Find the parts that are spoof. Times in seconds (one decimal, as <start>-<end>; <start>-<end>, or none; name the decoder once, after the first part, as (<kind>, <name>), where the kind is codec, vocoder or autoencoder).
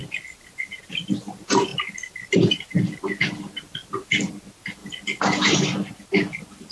none